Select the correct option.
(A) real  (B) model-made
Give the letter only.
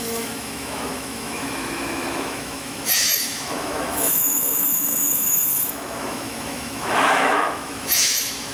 B